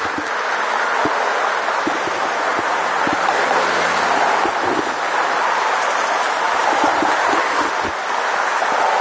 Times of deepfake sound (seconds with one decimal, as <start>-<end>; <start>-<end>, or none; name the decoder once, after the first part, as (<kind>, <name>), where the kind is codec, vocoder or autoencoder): none